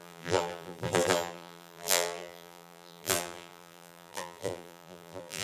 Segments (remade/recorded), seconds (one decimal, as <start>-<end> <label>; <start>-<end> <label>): 0.0-5.4 remade